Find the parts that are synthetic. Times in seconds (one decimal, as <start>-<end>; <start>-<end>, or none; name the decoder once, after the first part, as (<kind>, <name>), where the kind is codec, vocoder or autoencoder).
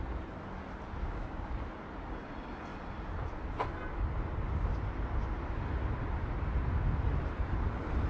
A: 1.0-1.5 (codec, DAC)